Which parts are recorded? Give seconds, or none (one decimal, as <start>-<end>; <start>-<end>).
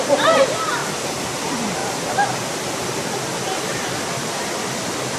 0.8-1.4; 1.8-5.2